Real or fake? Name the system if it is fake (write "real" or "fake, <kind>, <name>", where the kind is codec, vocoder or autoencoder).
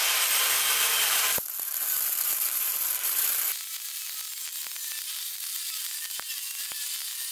fake, vocoder, BigVGAN v2